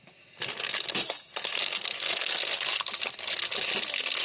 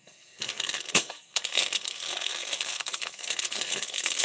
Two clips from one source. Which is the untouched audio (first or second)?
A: first